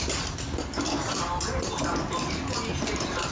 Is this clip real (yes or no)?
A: yes